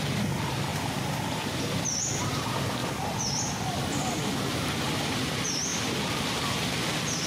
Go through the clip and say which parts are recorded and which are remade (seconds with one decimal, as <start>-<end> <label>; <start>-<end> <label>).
0.0-0.7 recorded; 0.7-1.2 remade; 1.2-2.8 recorded; 2.8-3.8 remade; 3.8-7.3 recorded